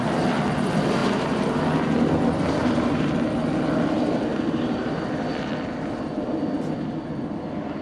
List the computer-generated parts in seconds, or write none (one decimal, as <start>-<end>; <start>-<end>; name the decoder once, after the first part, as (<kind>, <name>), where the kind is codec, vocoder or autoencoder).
1.0-1.6 (vocoder, BigVGAN v2); 2.6-3.1; 4.3-5.0